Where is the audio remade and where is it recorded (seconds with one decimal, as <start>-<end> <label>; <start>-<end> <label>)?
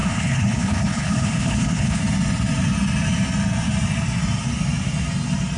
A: 0.0-2.0 remade; 2.0-5.6 recorded